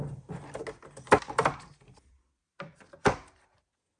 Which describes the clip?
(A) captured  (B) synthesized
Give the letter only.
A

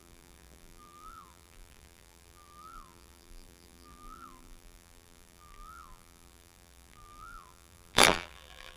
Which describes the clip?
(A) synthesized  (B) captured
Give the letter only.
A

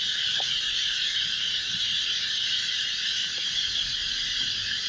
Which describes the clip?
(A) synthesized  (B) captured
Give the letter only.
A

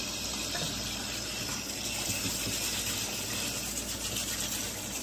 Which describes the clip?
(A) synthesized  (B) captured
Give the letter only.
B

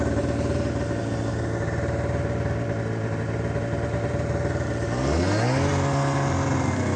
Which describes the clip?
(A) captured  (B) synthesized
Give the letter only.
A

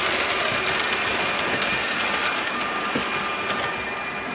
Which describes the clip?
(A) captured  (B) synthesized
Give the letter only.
A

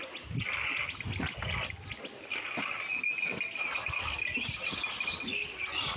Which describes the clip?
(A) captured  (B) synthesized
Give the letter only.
A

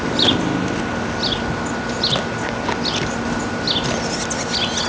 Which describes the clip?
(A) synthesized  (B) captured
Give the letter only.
B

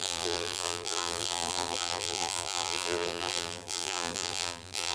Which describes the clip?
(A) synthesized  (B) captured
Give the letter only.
A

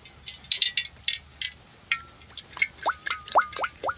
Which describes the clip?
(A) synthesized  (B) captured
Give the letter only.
B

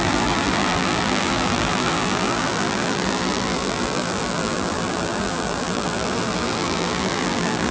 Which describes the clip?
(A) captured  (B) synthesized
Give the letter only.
B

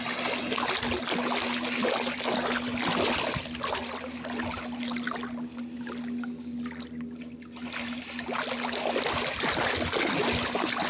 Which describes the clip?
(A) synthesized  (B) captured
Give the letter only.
B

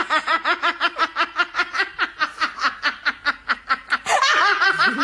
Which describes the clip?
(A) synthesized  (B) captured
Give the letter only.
A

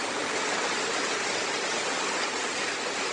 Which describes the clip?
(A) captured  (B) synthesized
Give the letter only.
A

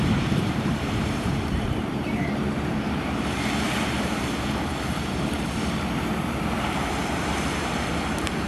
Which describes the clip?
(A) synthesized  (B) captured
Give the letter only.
A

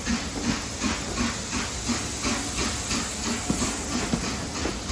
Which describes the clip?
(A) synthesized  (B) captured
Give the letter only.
B